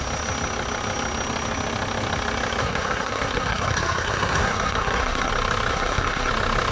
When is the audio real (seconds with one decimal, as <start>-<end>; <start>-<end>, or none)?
0.0-2.6; 5.3-5.7; 6.3-6.7